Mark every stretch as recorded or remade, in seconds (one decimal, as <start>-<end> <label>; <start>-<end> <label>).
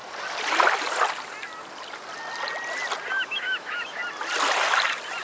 0.0-3.1 recorded; 3.1-4.0 remade; 4.0-5.2 recorded